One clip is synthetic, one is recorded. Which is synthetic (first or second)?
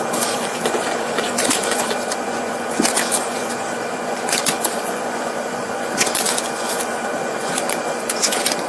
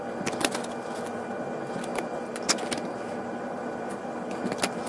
first